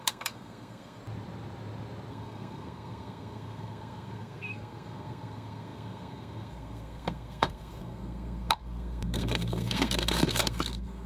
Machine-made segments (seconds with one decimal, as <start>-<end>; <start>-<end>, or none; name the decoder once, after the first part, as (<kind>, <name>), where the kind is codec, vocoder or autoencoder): 0.0-1.0 (codec, SNAC); 2.1-11.1